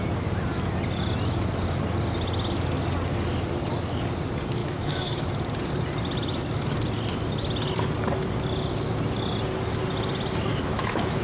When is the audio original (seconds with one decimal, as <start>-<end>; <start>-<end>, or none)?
0.0-4.6; 5.3-10.5